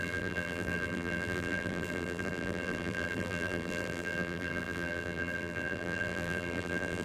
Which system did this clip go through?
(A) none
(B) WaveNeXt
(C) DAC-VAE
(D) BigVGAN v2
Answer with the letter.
D